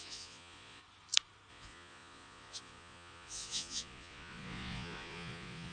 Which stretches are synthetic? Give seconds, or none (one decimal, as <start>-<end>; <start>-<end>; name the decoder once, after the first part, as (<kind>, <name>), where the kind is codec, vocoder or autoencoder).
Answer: 0.0-0.8 (vocoder, Vocos); 1.5-5.7